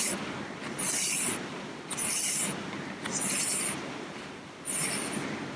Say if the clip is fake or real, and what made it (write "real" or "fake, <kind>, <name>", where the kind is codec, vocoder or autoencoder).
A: real